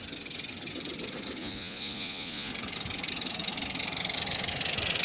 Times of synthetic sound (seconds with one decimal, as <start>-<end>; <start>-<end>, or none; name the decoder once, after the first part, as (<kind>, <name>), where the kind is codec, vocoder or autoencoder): 1.4-2.5 (vocoder, Vocos)